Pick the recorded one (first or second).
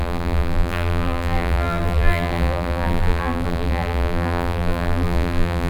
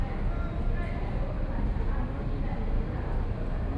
second